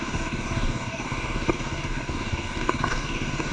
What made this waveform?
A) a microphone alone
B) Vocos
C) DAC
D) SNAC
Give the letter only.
C